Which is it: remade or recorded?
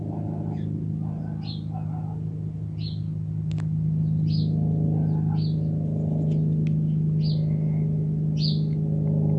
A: recorded